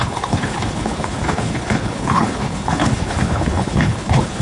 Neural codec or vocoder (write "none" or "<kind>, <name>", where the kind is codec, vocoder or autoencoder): codec, HILCodec